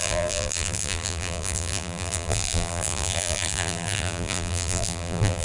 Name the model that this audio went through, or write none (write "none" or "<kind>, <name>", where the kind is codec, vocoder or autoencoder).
vocoder, BigVGAN v2